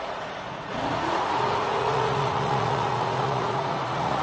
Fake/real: fake